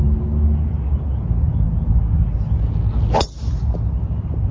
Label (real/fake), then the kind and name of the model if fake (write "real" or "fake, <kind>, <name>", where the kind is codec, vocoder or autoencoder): real